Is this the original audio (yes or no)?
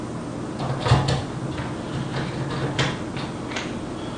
yes